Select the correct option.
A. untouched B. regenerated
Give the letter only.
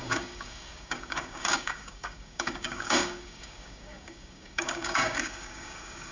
B